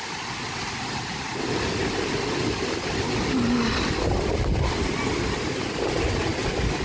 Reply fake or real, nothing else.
real